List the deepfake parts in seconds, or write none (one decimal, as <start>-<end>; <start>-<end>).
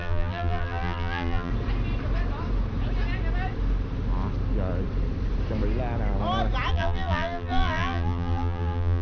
0.0-1.5; 6.7-9.0